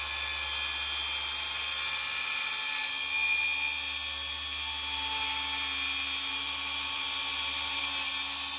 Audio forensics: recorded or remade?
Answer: recorded